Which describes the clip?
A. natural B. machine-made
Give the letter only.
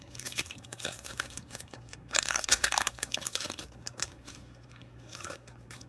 B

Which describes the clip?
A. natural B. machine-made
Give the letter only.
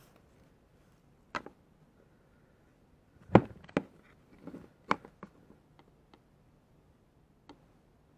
A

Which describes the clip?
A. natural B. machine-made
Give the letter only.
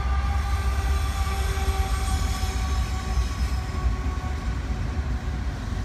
A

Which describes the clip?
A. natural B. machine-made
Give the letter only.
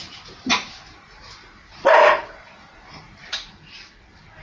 B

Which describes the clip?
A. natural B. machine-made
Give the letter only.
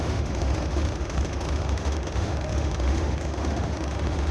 B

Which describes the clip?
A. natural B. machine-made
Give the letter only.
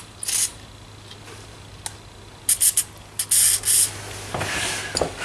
A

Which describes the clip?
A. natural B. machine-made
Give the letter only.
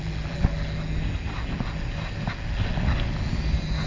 A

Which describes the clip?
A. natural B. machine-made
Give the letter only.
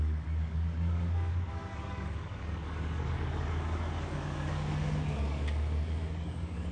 B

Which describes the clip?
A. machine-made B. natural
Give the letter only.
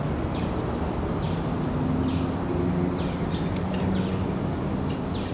B